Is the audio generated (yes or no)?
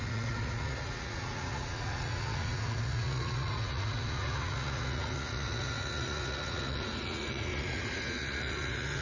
yes